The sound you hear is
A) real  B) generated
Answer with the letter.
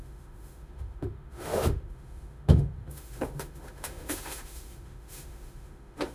B